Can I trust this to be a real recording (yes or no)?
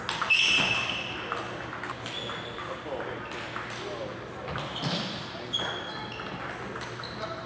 yes